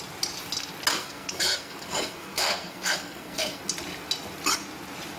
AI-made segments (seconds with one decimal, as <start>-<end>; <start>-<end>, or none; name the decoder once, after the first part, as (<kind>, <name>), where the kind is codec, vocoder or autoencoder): 0.9-3.6 (codec, SNAC)